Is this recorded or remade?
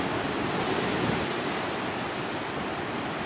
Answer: recorded